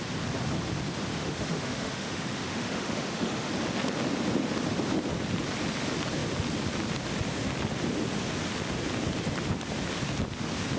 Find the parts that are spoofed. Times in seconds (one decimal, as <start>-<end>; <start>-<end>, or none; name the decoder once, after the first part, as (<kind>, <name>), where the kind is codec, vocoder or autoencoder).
1.1-3.5 (autoencoder, DAC-VAE)